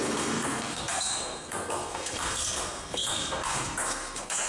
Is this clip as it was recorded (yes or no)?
no